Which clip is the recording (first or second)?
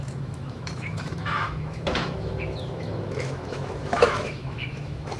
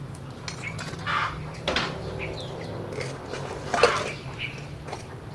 second